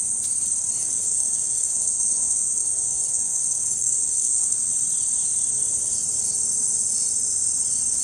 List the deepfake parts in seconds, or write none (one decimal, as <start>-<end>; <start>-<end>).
0.8-4.7